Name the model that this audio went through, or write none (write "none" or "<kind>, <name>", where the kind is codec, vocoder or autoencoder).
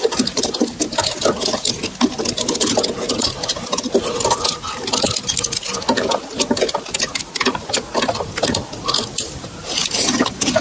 none